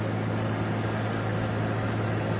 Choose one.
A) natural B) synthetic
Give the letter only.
A